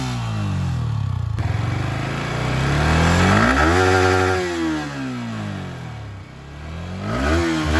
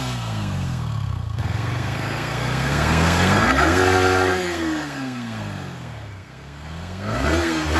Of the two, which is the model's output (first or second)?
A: second